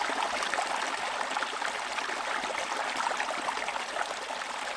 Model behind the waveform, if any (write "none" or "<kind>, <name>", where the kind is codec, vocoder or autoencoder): none